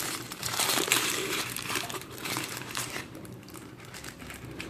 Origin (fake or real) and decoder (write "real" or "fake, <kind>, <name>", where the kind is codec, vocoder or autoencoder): fake, vocoder, BigVGAN v2